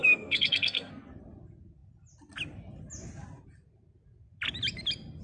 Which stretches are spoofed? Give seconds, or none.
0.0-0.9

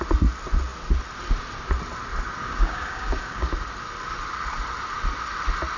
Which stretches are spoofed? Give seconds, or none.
2.4-3.5

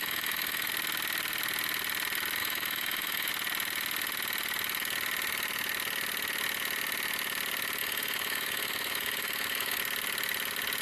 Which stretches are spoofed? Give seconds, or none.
0.0-0.7; 2.4-3.3; 7.8-9.8